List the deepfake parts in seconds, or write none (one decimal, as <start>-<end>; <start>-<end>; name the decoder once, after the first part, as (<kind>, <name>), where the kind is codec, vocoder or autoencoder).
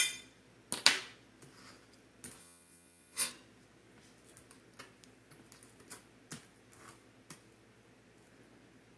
2.4-3.3 (vocoder, Vocos)